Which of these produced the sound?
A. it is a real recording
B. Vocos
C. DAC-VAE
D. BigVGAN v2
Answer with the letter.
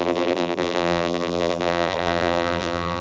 D